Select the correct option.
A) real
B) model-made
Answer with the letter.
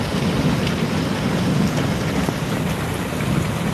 B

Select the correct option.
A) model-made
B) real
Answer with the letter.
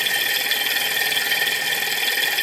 B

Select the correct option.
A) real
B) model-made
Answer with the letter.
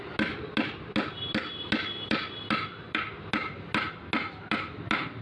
A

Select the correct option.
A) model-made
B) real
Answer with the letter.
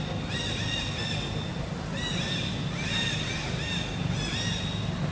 B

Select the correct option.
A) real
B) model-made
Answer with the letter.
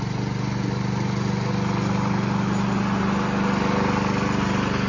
A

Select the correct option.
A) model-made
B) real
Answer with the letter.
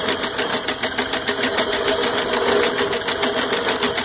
B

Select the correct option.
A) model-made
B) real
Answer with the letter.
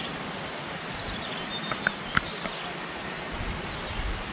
B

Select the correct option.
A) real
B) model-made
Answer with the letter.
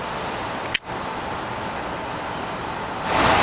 A